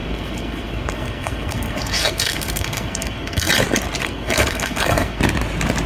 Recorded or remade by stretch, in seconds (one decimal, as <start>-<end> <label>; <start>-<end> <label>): 0.0-3.5 remade; 3.5-4.0 recorded; 4.0-5.2 remade; 5.2-5.9 recorded